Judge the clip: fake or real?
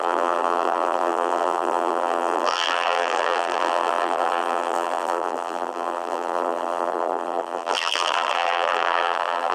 fake